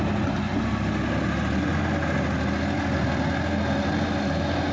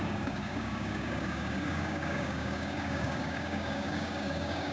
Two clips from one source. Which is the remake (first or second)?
second